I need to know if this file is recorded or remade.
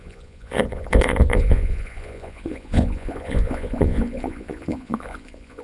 remade